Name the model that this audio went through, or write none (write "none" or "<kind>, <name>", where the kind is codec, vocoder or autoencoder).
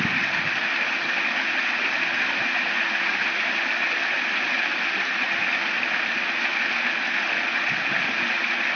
none